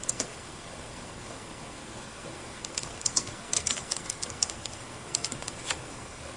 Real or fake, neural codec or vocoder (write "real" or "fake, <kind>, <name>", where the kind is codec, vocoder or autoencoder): fake, codec, SNAC